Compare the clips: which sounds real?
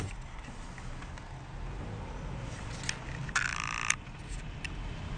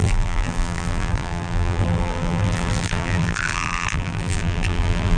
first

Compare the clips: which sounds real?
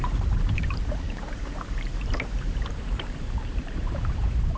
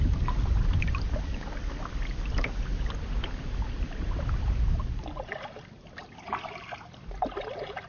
second